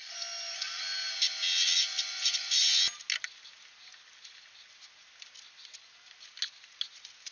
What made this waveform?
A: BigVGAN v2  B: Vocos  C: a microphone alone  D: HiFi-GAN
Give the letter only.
C